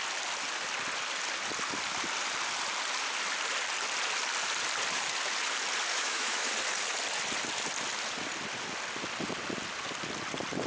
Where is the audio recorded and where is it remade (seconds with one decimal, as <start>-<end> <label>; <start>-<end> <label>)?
0.0-5.9 recorded; 5.9-6.5 remade; 6.5-10.7 recorded

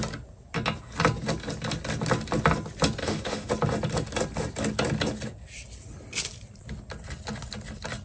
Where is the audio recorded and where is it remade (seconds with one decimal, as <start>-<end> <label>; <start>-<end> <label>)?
0.0-3.0 recorded; 3.0-3.5 remade; 3.5-8.0 recorded

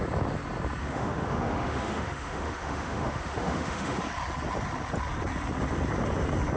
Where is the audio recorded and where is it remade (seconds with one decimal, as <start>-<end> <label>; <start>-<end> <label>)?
0.0-0.8 recorded; 0.8-4.0 remade; 4.0-6.6 recorded

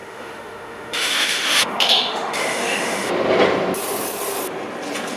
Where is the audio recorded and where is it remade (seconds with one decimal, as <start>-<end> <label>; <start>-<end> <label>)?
0.0-3.1 remade; 3.1-5.2 recorded